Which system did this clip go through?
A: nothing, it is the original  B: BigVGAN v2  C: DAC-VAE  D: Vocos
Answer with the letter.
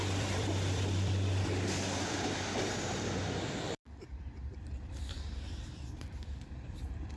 B